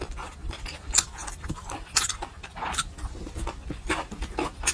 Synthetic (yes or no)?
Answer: no